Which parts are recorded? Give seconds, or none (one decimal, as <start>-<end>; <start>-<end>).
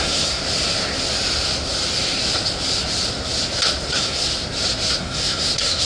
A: 0.4-3.9; 4.3-5.0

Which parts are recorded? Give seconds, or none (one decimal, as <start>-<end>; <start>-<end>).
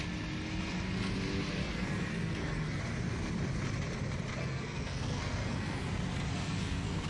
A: 0.0-1.6; 2.8-4.4; 5.8-6.3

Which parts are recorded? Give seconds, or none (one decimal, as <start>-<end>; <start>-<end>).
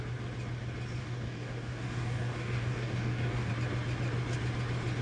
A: 0.0-1.0; 3.5-5.0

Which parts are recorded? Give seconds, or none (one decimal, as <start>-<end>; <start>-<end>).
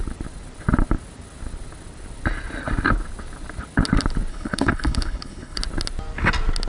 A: 0.0-4.3; 5.6-6.7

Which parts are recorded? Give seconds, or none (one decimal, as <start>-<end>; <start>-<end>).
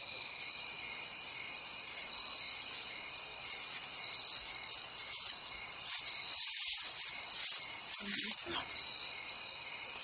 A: 2.2-2.8; 3.3-5.8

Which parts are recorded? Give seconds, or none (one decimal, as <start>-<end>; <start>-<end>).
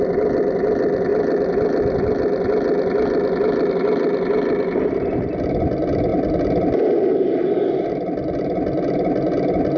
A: 0.0-9.8